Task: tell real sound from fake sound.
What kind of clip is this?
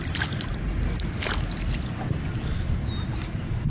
real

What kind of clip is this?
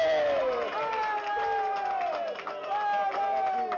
real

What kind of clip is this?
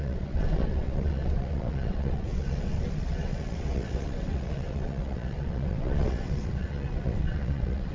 fake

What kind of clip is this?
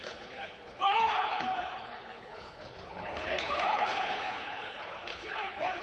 fake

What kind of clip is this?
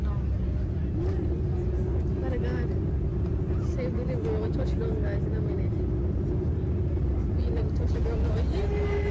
real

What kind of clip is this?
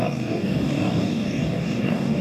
fake